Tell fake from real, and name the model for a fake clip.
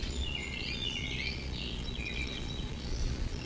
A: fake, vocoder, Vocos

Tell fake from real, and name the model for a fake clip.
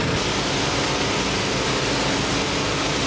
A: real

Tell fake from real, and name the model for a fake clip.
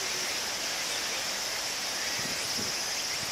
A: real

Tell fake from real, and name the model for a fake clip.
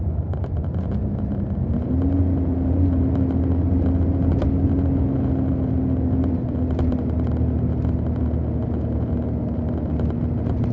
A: real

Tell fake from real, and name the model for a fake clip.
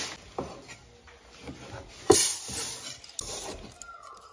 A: real